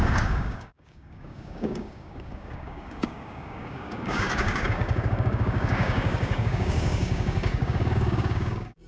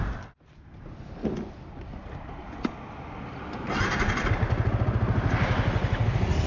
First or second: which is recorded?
second